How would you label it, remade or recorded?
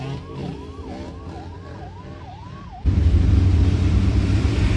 remade